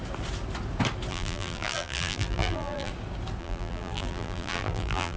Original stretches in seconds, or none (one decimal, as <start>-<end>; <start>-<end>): 0.0-1.1; 2.9-3.4

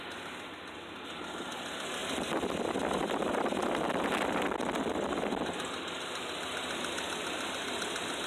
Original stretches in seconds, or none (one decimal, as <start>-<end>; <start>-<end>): 0.0-8.3

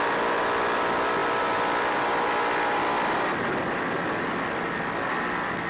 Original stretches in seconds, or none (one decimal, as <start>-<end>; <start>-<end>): 0.0-5.7

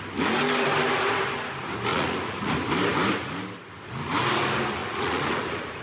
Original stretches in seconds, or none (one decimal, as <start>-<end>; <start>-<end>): 0.0-1.9; 2.5-4.8

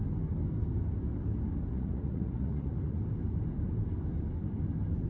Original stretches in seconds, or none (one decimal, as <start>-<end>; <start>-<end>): 0.0-1.7; 3.0-5.1